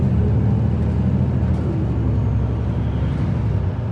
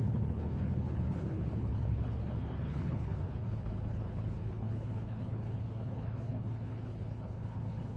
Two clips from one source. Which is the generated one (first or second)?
second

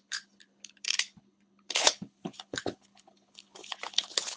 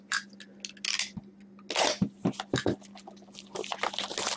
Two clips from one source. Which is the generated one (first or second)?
first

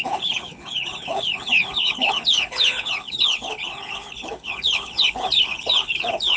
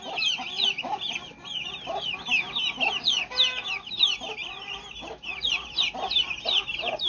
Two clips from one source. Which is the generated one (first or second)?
first